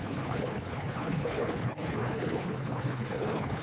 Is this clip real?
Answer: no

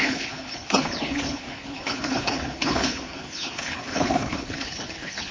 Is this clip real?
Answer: no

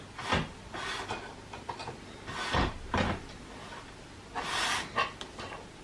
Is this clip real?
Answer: yes